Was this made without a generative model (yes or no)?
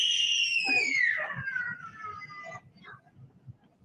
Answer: yes